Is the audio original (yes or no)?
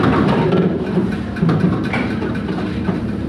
no